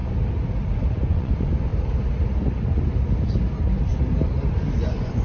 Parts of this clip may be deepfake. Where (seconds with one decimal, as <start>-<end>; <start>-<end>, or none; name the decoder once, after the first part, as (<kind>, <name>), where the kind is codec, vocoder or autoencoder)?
0.9-1.7 (vocoder, Vocos); 4.8-5.2